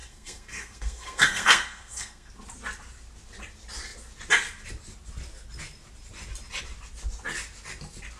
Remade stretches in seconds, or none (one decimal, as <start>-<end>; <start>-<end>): 0.0-2.3